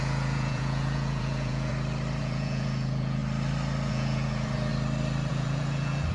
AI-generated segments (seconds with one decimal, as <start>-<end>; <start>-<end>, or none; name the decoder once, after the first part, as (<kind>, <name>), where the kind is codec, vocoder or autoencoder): 0.0-1.7 (vocoder, Vocos); 2.2-3.2; 3.9-4.7; 5.3-6.1